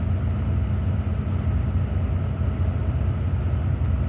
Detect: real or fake real